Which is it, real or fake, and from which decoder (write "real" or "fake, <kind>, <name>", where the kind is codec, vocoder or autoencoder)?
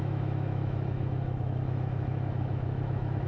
fake, autoencoder, DAC-VAE